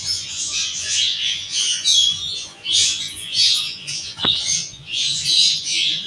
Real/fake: fake